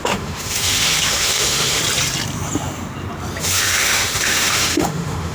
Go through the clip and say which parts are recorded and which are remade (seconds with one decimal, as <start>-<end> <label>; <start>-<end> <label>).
0.0-1.8 remade; 1.8-3.4 recorded; 3.4-5.3 remade